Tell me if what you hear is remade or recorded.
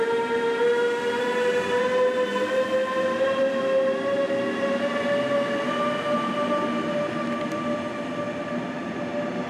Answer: recorded